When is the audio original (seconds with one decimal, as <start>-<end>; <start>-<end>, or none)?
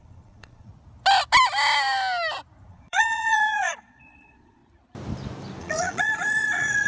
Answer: 0.7-2.7; 4.6-5.6